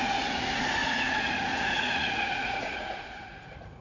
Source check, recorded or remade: remade